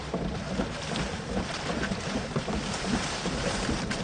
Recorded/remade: recorded